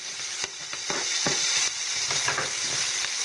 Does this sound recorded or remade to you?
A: recorded